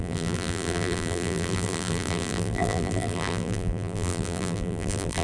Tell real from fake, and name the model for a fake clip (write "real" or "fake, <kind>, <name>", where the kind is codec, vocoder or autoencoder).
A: fake, vocoder, BigVGAN v2